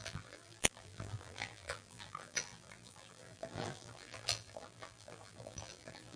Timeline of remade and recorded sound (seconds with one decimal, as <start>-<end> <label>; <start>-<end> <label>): 0.0-6.2 remade

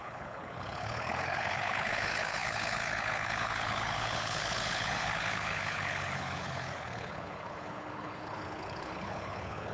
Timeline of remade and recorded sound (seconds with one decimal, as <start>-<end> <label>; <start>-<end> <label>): 0.0-9.7 remade

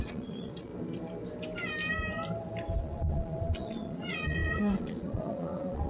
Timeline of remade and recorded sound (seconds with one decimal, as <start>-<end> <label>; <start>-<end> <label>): 0.0-0.7 remade; 0.7-2.8 recorded; 2.8-5.9 remade

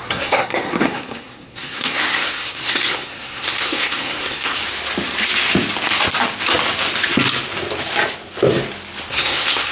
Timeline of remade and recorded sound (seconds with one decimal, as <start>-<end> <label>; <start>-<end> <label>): 0.0-4.6 remade; 4.6-9.1 recorded; 9.1-9.7 remade